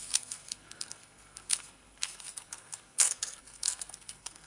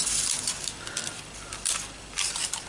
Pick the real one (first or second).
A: second